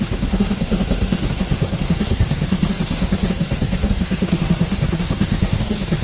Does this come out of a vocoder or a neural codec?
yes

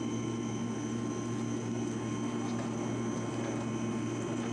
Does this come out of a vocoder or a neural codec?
no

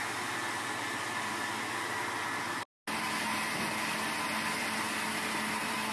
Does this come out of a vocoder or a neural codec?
no